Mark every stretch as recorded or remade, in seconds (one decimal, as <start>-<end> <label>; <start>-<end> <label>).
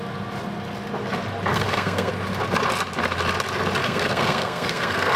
0.0-1.5 recorded; 1.5-2.1 remade; 2.1-3.8 recorded; 3.8-5.2 remade